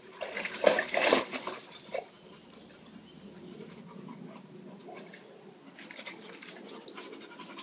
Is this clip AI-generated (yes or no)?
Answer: no